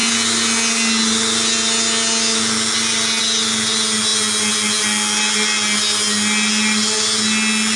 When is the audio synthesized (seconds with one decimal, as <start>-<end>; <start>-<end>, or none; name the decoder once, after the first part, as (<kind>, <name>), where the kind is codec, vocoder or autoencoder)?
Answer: none